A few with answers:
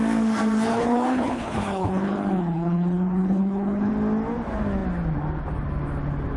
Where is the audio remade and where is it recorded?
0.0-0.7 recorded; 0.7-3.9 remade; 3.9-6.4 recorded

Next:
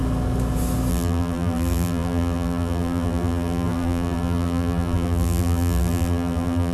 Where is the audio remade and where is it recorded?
0.0-0.9 recorded; 0.9-6.7 remade

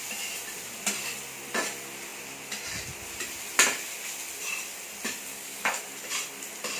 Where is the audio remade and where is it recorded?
0.0-5.3 recorded; 5.3-5.8 remade; 5.8-6.8 recorded

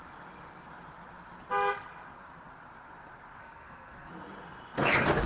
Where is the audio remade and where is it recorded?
0.0-3.4 recorded; 3.4-4.1 remade; 4.1-5.3 recorded

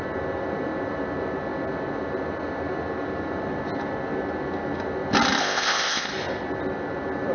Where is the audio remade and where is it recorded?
0.0-5.4 recorded; 5.4-6.1 remade; 6.1-7.3 recorded

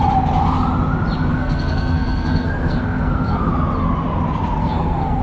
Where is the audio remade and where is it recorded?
0.0-1.3 recorded; 1.3-3.5 remade; 3.5-4.6 recorded; 4.6-5.2 remade

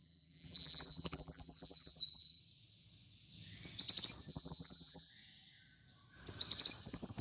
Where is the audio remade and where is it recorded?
0.0-2.4 remade; 2.4-4.3 recorded; 4.3-5.1 remade; 5.1-7.2 recorded

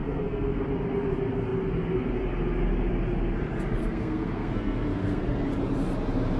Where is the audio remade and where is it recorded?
0.0-0.6 remade; 0.6-3.8 recorded; 3.8-5.2 remade; 5.2-6.4 recorded